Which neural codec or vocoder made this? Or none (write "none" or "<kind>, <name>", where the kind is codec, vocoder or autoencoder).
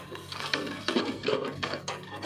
codec, SNAC